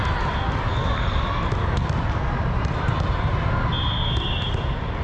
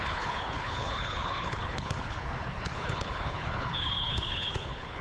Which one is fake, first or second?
second